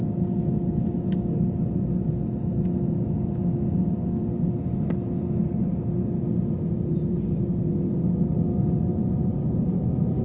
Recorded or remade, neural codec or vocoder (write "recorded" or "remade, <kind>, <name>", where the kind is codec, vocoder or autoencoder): recorded